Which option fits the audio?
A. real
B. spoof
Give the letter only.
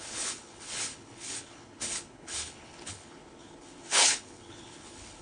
B